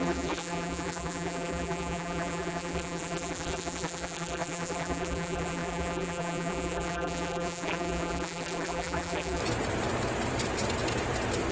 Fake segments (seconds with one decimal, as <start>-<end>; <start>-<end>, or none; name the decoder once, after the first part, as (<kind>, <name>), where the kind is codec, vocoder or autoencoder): 0.0-9.4 (vocoder, BigVGAN v2)